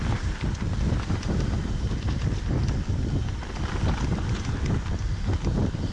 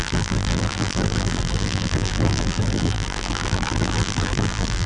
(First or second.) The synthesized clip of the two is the second